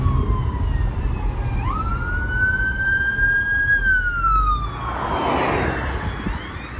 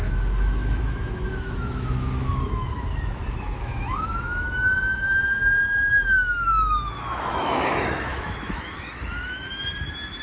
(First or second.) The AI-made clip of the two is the second